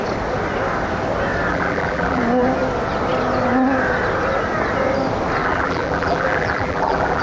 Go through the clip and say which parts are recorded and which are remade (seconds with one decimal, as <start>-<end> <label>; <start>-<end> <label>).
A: 0.0-1.5 recorded; 1.5-2.2 remade; 2.2-5.4 recorded; 5.4-7.2 remade